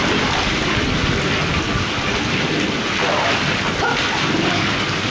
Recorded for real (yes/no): yes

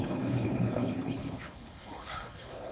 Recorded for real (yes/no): no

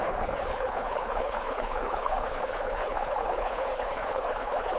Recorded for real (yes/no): no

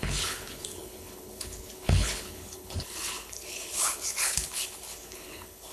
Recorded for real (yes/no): no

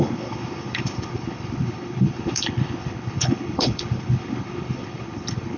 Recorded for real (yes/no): no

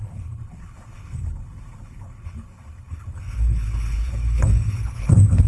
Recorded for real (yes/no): no